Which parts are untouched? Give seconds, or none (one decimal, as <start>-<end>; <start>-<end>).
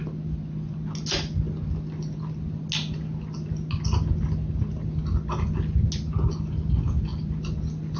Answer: 0.0-8.0